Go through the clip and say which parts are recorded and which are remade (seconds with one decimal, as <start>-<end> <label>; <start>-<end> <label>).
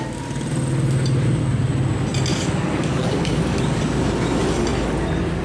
0.0-2.3 recorded; 2.3-3.8 remade; 3.8-5.4 recorded